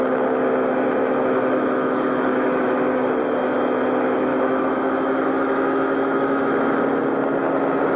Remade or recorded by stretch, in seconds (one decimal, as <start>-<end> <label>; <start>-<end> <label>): 0.0-1.0 recorded; 1.0-3.2 remade; 3.2-4.3 recorded; 4.3-6.8 remade; 6.8-8.0 recorded